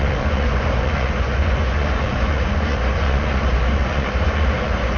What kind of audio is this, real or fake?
fake